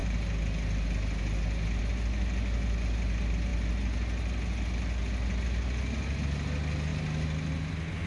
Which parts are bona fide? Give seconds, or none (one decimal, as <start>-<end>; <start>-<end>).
0.0-8.1

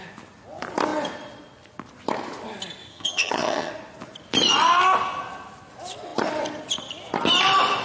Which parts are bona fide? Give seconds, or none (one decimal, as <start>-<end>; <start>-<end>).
0.0-2.9; 3.7-7.8